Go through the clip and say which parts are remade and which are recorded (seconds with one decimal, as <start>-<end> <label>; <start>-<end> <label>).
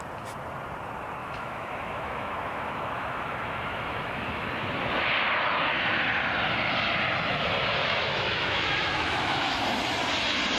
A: 0.0-1.2 recorded; 1.2-4.5 remade; 4.5-7.8 recorded; 7.8-9.6 remade; 9.6-10.6 recorded